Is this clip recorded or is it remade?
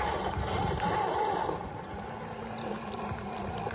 recorded